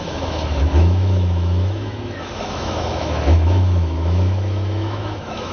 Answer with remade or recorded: remade